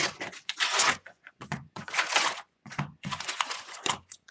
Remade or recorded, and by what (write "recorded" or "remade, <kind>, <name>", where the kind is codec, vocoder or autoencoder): remade, vocoder, Vocos